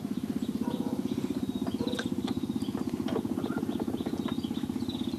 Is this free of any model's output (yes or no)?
no